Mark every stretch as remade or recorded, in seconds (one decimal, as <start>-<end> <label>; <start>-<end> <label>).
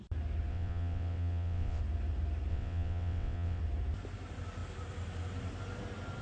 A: 0.0-0.5 recorded; 0.5-1.8 remade; 1.8-2.5 recorded; 2.5-3.6 remade; 3.6-6.2 recorded